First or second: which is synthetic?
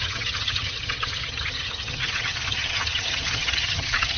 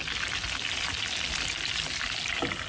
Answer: first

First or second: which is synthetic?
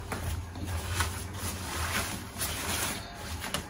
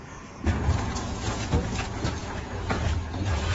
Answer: second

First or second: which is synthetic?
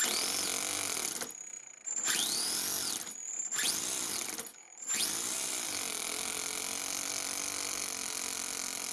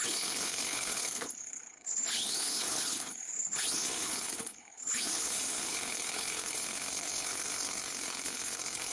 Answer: second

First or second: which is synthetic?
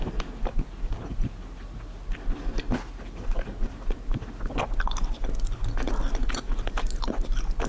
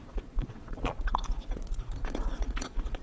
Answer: second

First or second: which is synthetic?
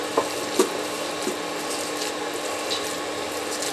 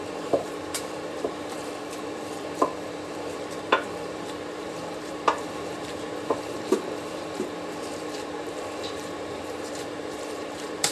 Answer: second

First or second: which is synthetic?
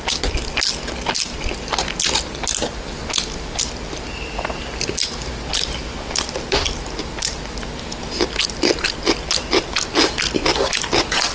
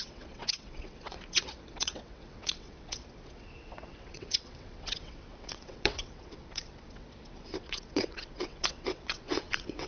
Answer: second